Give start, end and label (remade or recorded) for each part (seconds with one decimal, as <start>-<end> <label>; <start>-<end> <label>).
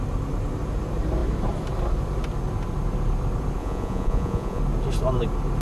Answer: 0.0-3.6 recorded; 3.6-4.6 remade; 4.6-5.6 recorded